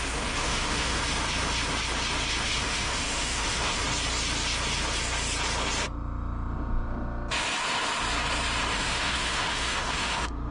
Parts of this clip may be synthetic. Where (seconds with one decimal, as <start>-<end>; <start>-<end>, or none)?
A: 0.0-1.0; 2.4-3.8; 8.7-10.5